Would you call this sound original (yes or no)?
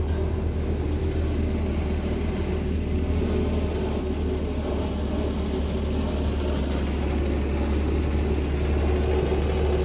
yes